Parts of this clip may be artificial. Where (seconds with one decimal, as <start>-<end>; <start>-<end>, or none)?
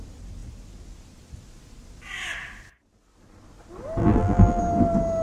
4.0-4.6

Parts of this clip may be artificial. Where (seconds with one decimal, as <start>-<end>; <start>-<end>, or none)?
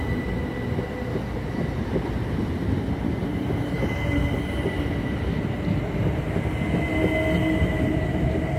3.2-4.2